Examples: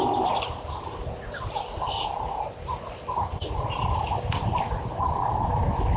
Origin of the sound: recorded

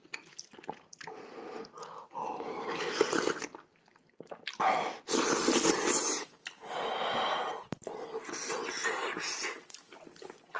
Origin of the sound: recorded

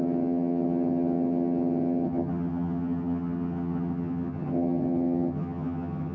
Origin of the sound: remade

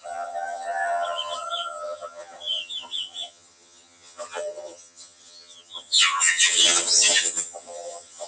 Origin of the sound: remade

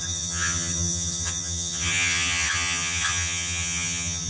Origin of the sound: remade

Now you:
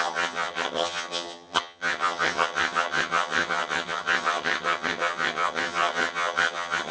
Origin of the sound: remade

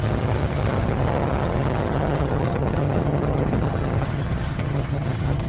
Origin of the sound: remade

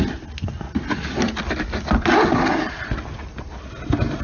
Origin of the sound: recorded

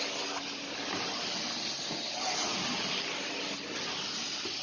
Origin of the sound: recorded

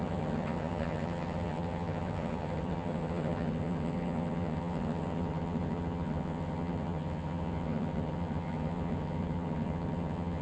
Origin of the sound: remade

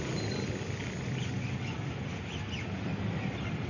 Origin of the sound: recorded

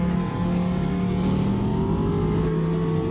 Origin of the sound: recorded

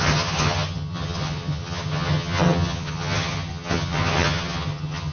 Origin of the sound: remade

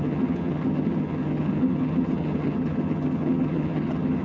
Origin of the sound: remade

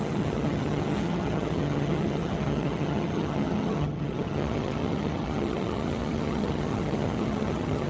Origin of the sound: remade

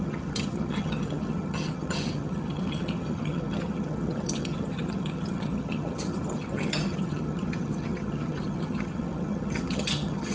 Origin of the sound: remade